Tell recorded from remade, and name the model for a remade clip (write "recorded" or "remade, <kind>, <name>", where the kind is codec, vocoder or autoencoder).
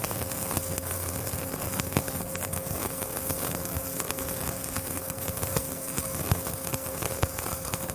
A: remade, codec, SNAC